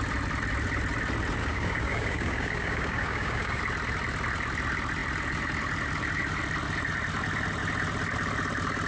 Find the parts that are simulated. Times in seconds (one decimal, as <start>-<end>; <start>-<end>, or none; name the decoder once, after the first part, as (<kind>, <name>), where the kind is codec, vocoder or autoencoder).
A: 1.4-3.6 (codec, DAC)